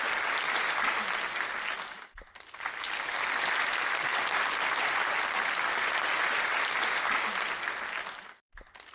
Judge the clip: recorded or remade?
recorded